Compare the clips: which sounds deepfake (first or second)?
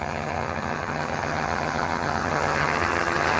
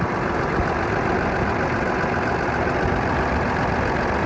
first